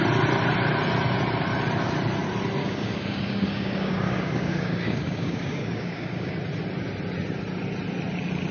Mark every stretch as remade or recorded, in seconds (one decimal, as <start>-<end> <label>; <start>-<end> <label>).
0.0-2.6 recorded; 2.6-6.4 remade; 6.4-8.5 recorded